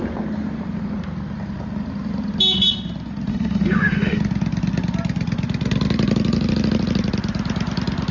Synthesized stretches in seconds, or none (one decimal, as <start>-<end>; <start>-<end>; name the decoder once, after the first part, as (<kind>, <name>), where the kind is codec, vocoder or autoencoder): 3.3-4.2 (autoencoder, DAC-VAE)